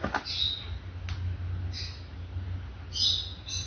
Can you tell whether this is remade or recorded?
recorded